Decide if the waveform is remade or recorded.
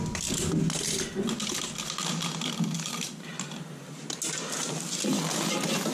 recorded